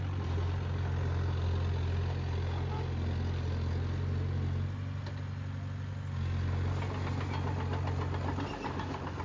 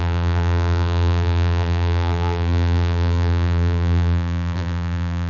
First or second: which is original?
first